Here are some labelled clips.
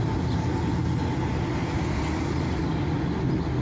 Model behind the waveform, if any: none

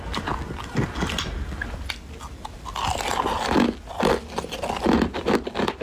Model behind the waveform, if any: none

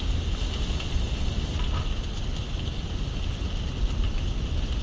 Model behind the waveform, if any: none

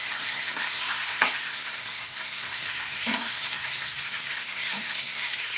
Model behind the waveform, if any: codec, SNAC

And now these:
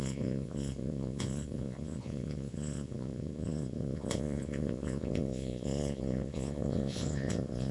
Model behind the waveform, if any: vocoder, Vocos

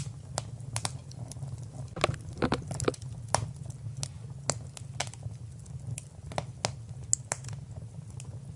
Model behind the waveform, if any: none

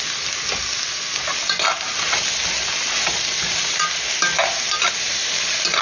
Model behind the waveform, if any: none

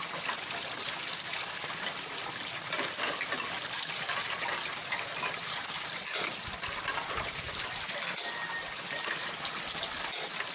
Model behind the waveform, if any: none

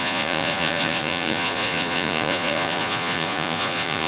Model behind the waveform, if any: vocoder, Vocos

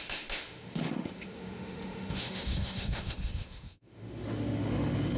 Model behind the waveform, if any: autoencoder, DAC-VAE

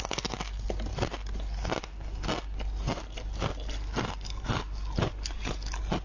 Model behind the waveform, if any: none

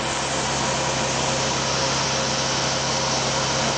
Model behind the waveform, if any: none